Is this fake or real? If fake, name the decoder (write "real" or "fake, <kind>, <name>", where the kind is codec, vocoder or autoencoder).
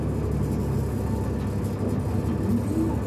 real